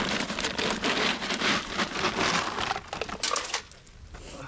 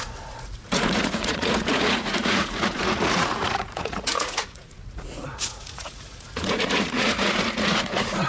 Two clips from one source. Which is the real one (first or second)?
first